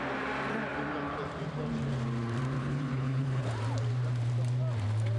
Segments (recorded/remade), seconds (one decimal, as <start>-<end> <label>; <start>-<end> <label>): 0.0-2.6 recorded; 2.6-3.4 remade; 3.4-5.2 recorded